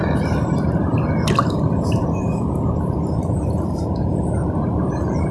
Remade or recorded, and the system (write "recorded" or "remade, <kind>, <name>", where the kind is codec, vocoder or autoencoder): remade, vocoder, BigVGAN v2